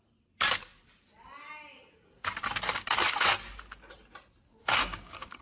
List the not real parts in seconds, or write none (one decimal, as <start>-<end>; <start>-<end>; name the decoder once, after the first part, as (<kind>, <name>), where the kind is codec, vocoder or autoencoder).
4.6-5.4 (codec, DAC)

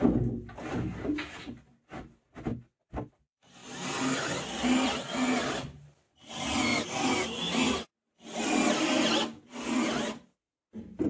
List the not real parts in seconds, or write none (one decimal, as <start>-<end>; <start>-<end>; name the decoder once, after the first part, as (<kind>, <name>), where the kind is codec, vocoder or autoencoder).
3.6-6.3 (vocoder, BigVGAN v2)

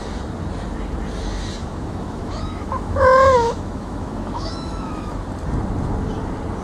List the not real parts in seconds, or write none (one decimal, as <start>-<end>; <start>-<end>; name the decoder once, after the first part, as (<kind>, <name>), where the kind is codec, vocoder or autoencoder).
1.6-5.1 (autoencoder, DAC-VAE)

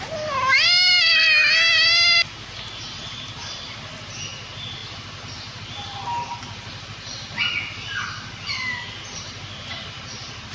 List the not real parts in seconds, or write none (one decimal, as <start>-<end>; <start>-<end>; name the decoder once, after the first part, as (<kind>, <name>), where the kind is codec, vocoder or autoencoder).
none

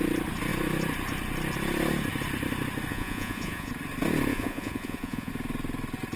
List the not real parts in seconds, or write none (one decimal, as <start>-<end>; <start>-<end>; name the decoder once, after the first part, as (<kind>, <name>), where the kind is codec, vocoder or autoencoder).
2.9-3.7 (vocoder, Vocos); 4.3-5.3

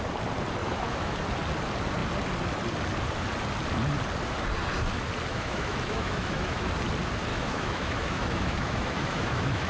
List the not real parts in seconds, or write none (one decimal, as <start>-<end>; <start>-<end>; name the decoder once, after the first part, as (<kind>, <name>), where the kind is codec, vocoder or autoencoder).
0.6-1.2 (autoencoder, DAC-VAE); 5.3-6.7; 7.3-9.7

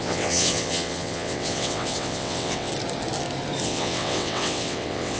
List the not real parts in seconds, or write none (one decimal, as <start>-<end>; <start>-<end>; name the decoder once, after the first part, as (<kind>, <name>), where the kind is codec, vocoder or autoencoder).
0.0-2.7 (vocoder, WaveNeXt); 3.6-5.2

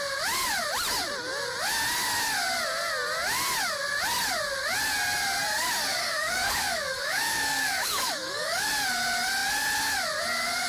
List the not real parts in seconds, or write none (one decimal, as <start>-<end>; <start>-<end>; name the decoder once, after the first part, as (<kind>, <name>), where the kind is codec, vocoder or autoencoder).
5.9-8.7 (codec, DAC)